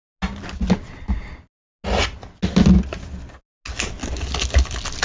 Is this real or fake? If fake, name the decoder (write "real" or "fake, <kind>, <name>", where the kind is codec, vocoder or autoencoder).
real